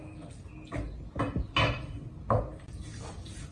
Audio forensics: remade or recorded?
recorded